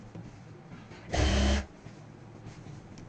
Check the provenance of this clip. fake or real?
fake